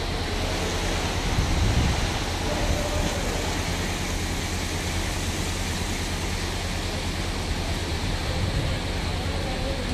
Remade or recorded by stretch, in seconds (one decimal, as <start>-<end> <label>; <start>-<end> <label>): 0.0-7.8 recorded; 7.8-8.7 remade; 8.7-9.9 recorded